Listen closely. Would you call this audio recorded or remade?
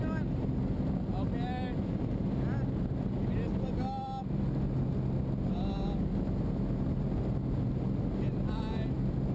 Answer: recorded